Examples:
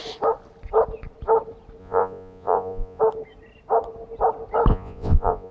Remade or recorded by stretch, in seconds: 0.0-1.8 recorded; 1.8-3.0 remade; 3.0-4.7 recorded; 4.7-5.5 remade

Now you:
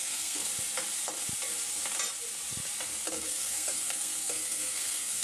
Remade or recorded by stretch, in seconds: 0.0-0.5 remade; 0.5-3.1 recorded; 3.1-5.2 remade

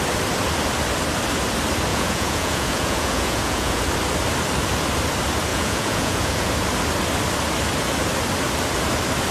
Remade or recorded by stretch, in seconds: 0.0-1.9 recorded; 1.9-3.8 remade; 3.8-5.5 recorded; 5.5-6.5 remade; 6.5-9.3 recorded

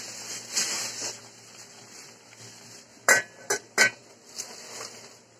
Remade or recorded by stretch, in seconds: 0.0-5.4 recorded